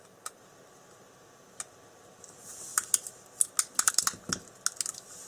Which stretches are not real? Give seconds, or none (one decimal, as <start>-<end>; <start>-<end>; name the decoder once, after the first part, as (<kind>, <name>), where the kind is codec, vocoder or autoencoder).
none